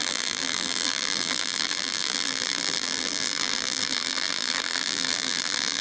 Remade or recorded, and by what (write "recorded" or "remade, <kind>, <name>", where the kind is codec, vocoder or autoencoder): remade, vocoder, BigVGAN v2